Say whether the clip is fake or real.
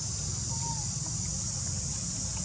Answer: real